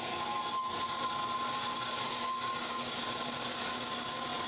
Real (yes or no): yes